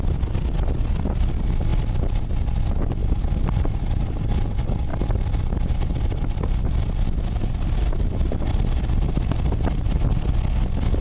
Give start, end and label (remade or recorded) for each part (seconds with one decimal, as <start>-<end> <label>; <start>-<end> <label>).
0.0-1.7 recorded; 1.7-2.2 remade; 2.2-4.9 recorded; 4.9-8.3 remade; 8.3-11.0 recorded

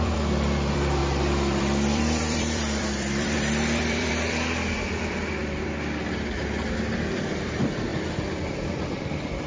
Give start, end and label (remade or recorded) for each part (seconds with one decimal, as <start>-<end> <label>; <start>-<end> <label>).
0.0-5.4 remade; 5.4-7.1 recorded; 7.1-9.5 remade

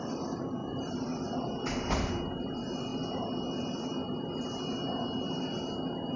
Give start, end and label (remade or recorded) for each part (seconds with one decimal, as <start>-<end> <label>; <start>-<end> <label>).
0.0-0.6 recorded; 0.6-1.6 remade; 1.6-6.2 recorded